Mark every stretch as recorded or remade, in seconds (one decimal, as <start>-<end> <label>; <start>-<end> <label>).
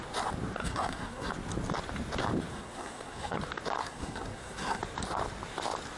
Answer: 0.0-0.6 recorded; 0.6-1.3 remade; 1.3-2.5 recorded; 2.5-3.4 remade; 3.4-3.8 recorded; 3.8-4.8 remade; 4.8-6.0 recorded